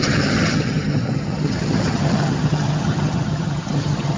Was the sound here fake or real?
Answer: fake